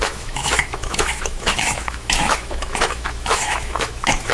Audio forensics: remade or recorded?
remade